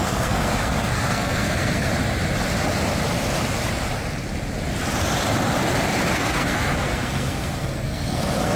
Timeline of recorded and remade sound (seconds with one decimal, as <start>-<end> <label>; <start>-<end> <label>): 0.0-1.9 remade; 1.9-6.1 recorded; 6.1-8.6 remade

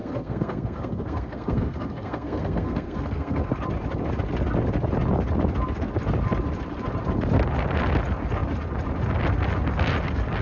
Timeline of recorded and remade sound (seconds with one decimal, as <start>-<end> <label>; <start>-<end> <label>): 0.0-3.5 remade; 3.5-10.4 recorded

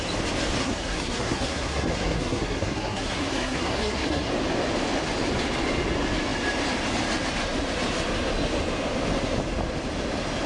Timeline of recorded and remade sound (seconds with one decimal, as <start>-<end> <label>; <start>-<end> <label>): 0.0-0.6 recorded; 0.6-4.3 remade; 4.3-10.5 recorded